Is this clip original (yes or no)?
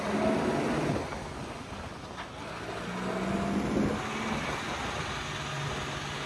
yes